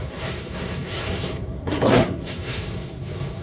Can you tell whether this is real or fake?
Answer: fake